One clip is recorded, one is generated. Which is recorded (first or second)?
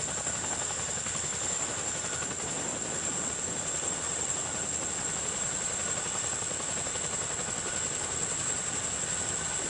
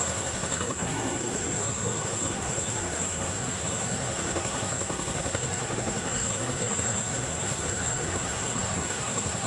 first